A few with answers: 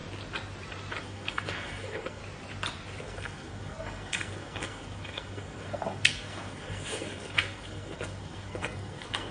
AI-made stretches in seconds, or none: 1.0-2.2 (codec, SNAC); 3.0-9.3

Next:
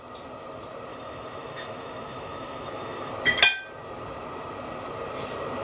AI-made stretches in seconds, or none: 0.9-3.1 (autoencoder, DAC-VAE)